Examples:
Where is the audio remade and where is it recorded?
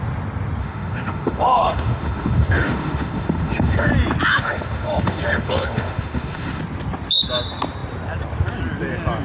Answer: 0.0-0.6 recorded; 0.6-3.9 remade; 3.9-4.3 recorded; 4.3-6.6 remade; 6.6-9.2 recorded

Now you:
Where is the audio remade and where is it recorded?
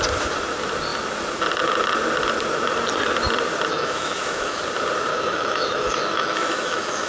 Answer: 0.0-3.7 recorded; 3.7-4.6 remade; 4.6-5.1 recorded; 5.1-7.1 remade